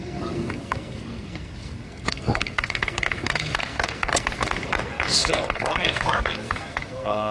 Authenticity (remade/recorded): remade